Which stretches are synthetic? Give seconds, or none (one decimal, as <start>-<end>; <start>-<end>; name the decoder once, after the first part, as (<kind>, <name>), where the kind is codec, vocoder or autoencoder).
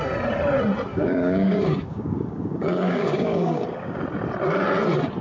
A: 0.9-4.0 (codec, DAC)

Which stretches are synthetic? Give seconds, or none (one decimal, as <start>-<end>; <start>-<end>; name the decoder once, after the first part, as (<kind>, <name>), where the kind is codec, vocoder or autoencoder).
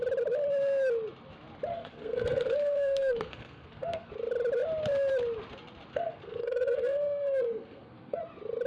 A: 1.7-4.1 (codec, SNAC); 5.9-8.2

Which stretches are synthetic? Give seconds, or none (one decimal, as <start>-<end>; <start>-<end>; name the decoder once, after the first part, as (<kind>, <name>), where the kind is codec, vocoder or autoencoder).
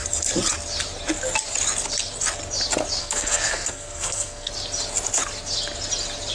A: 3.0-4.5 (codec, SNAC)